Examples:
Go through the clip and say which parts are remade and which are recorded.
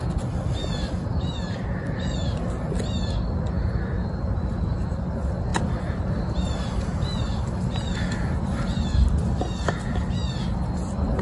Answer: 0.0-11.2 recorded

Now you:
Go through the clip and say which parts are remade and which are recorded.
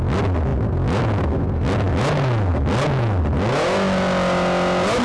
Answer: 0.0-5.0 recorded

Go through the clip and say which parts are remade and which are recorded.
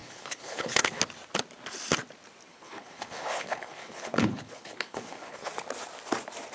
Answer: 0.0-1.0 remade; 1.0-2.5 recorded; 2.5-5.5 remade; 5.5-6.5 recorded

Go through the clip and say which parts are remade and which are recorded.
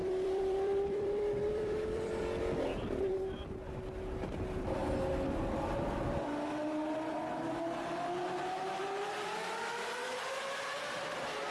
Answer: 0.0-2.4 remade; 2.4-11.5 recorded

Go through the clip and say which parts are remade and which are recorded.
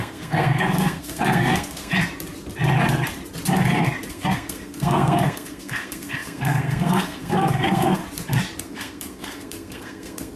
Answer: 0.0-1.9 remade; 1.9-4.1 recorded; 4.1-8.0 remade; 8.0-8.6 recorded; 8.6-10.4 remade